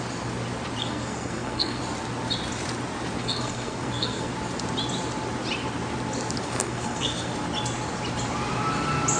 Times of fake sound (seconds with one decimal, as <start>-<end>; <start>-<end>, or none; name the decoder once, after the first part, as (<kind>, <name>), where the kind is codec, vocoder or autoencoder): 0.8-1.8 (codec, SNAC); 3.2-4.3; 6.4-7.3